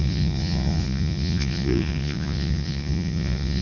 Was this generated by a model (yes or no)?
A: yes